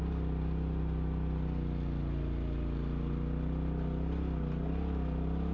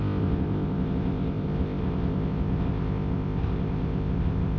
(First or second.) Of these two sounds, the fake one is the second